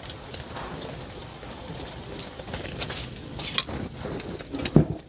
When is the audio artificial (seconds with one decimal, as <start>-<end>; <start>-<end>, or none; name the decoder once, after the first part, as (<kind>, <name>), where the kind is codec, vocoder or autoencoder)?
none